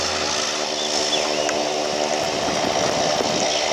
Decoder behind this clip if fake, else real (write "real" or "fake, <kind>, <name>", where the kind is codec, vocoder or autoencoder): real